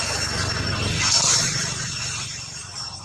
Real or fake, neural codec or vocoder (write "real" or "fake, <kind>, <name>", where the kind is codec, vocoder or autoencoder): real